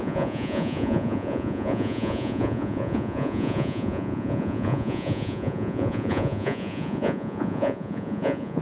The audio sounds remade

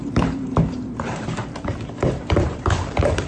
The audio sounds remade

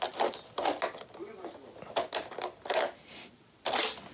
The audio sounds recorded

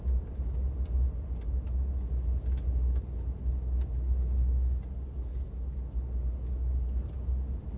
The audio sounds recorded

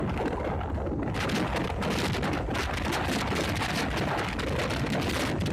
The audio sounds recorded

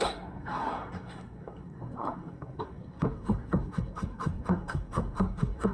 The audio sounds remade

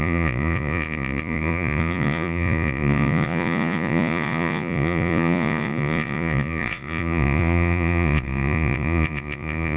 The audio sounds remade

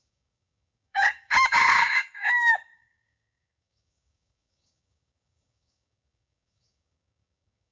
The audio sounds remade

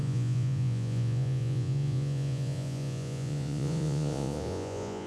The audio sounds remade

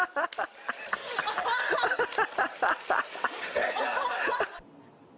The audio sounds recorded